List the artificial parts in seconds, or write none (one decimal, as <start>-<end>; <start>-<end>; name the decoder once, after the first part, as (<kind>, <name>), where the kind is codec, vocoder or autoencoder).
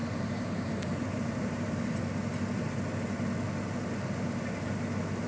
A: 0.0-2.3 (vocoder, BigVGAN v2)